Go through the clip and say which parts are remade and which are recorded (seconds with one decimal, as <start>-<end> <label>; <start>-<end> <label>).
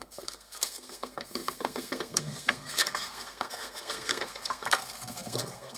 0.0-5.8 remade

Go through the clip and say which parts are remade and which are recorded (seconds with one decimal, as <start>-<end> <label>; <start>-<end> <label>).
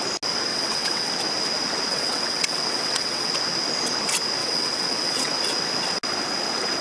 0.0-0.5 recorded; 0.5-1.1 remade; 1.1-1.9 recorded; 1.9-3.3 remade; 3.3-4.4 recorded; 4.4-5.3 remade; 5.3-6.8 recorded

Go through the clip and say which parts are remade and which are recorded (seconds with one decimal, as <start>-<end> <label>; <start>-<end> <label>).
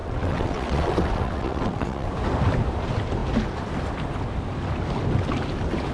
0.0-2.1 remade; 2.1-5.9 recorded